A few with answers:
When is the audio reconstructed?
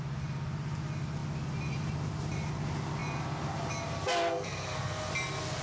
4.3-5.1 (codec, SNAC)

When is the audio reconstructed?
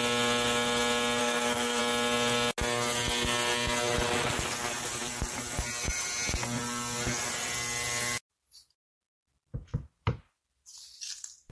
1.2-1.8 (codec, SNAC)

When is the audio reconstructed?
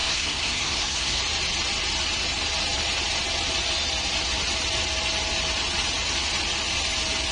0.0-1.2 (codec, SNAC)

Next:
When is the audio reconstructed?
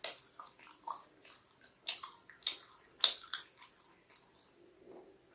none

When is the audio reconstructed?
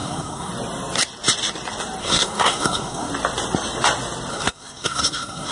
0.0-0.5 (codec, SNAC); 2.0-3.1; 4.3-5.5